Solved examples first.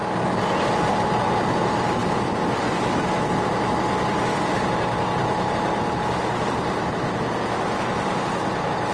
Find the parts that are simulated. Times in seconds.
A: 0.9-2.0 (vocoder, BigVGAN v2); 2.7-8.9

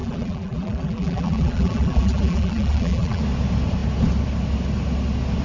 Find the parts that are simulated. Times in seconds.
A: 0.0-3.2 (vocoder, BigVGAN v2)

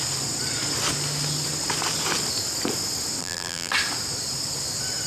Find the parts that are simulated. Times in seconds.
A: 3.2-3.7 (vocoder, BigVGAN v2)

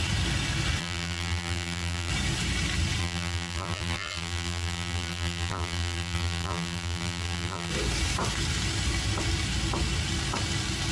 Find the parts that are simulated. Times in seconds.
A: 0.8-2.1 (vocoder, BigVGAN v2); 3.0-7.7

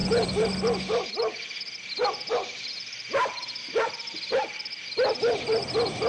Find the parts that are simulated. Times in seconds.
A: 0.0-1.1 (vocoder, BigVGAN v2); 2.0-2.7; 3.3-6.1

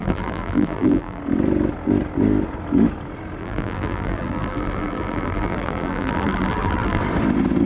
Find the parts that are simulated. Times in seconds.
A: 0.0-1.2 (vocoder, BigVGAN v2); 3.4-7.0

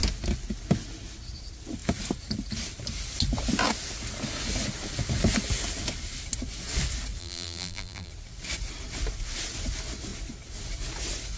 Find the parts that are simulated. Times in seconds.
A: 7.2-8.1 (vocoder, BigVGAN v2)

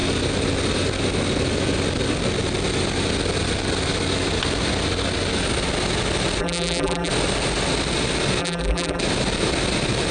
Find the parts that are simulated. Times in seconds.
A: 6.4-7.1 (vocoder, BigVGAN v2); 8.4-9.0